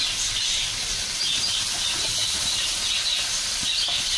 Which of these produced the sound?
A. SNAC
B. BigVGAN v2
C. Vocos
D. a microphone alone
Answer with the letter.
D